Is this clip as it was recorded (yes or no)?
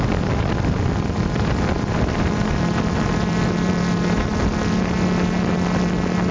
yes